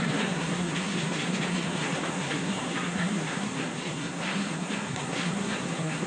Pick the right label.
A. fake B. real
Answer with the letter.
A